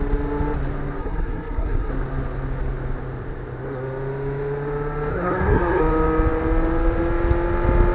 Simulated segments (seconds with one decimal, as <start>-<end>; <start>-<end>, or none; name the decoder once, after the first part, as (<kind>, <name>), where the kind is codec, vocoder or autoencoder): 1.0-1.9 (codec, SNAC); 5.1-5.8